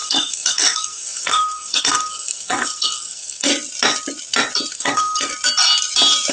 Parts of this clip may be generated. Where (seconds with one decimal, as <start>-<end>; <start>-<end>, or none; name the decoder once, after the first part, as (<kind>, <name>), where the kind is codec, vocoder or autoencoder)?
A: 0.0-3.5 (codec, SNAC); 4.7-5.3